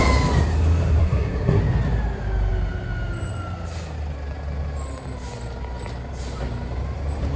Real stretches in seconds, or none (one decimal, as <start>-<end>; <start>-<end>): 0.0-1.0; 1.6-7.4